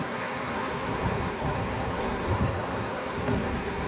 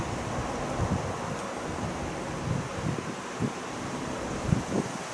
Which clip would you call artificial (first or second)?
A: first